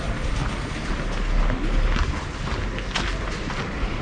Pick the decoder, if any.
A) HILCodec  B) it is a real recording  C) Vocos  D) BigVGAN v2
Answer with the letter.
B